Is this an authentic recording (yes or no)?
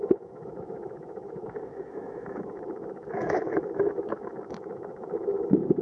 no